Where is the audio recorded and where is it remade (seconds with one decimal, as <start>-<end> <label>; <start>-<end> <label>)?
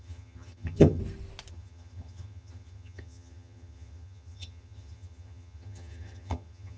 0.0-1.0 remade; 1.0-1.5 recorded; 1.5-6.8 remade